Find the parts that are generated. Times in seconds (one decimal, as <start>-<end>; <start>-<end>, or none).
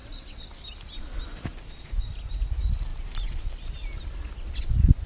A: 0.0-0.5